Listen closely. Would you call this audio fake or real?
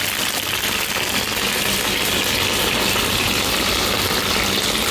real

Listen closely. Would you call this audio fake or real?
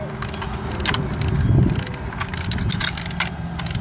real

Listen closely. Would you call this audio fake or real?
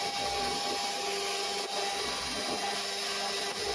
real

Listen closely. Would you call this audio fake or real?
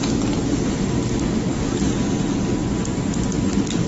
real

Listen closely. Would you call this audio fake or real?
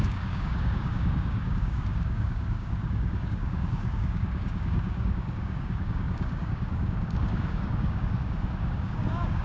fake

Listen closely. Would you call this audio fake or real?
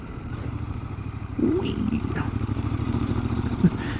fake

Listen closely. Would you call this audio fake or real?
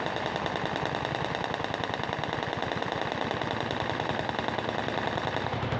real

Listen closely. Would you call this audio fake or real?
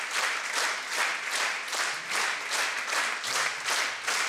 real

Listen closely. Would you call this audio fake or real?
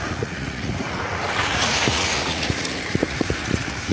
fake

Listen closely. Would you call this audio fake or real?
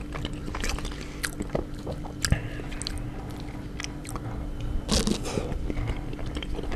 real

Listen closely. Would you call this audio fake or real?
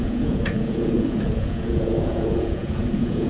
fake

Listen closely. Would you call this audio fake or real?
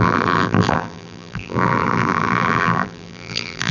fake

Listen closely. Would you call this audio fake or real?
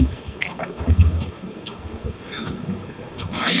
fake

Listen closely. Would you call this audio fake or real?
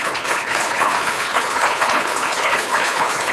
fake